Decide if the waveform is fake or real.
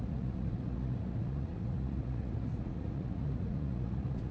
fake